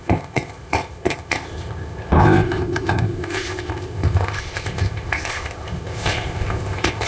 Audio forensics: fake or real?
fake